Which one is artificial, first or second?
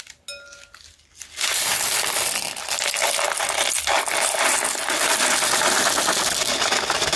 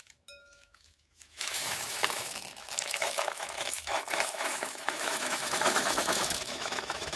second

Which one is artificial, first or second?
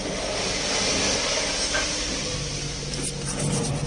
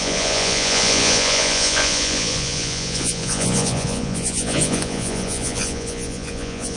second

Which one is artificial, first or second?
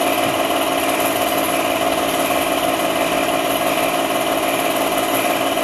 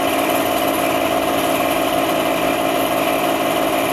second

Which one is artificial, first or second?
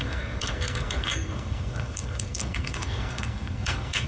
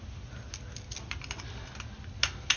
first